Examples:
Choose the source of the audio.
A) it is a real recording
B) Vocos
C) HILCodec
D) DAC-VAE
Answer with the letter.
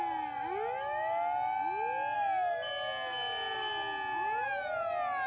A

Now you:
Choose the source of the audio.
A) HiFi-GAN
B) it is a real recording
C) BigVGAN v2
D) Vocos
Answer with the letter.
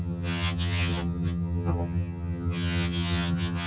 A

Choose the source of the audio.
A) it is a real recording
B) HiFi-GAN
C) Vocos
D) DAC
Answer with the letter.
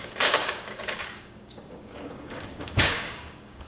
D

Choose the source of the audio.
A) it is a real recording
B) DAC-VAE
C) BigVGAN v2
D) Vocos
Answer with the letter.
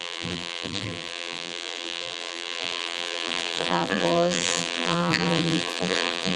C